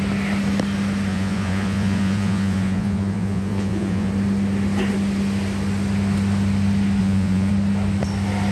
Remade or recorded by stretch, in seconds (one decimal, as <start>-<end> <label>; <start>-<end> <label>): 0.0-1.1 recorded; 1.1-4.1 remade; 4.1-7.0 recorded; 7.0-7.5 remade; 7.5-8.5 recorded